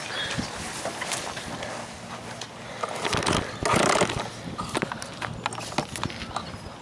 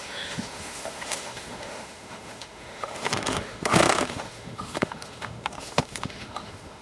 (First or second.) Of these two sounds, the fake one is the second